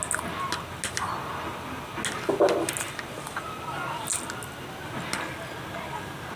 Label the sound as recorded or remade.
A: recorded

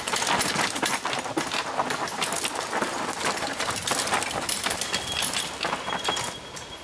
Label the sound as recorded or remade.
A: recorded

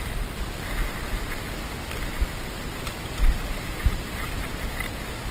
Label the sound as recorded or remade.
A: recorded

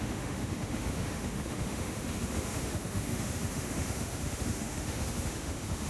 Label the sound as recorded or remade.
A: remade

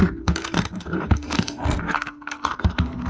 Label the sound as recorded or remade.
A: remade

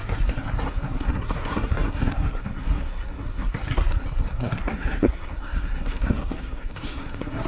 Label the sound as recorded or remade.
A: remade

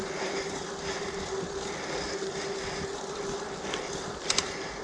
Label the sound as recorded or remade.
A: recorded